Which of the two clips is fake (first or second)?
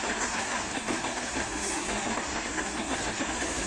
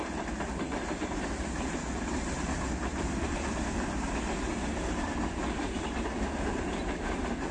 first